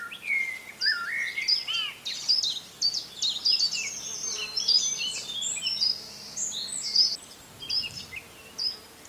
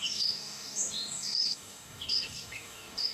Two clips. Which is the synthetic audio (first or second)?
second